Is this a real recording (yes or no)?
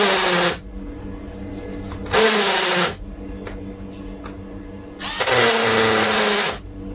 yes